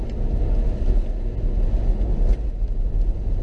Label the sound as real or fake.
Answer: real